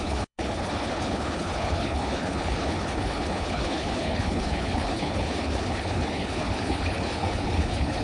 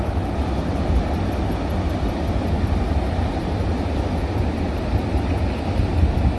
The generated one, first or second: first